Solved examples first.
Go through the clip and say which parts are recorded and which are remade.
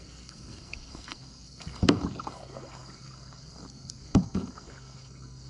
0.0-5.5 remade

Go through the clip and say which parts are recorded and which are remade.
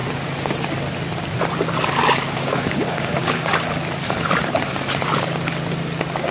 0.0-2.3 recorded; 2.3-3.5 remade; 3.5-6.3 recorded